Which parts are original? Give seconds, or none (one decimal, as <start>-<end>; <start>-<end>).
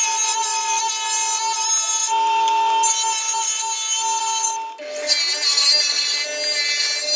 0.0-7.2